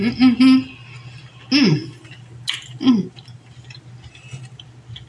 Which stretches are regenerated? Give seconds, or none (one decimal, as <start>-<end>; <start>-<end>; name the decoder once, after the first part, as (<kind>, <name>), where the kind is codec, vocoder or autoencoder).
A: none